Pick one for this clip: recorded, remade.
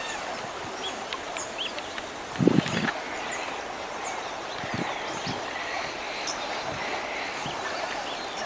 recorded